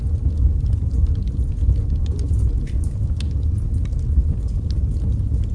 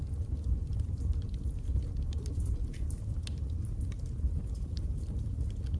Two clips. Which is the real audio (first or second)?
first